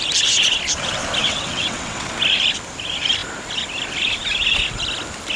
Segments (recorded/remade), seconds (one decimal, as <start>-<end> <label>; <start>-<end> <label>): 0.0-1.2 recorded; 1.2-2.1 remade; 2.1-5.4 recorded